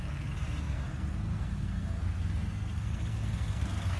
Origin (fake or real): fake